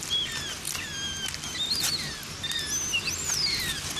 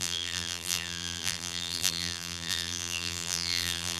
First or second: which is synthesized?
second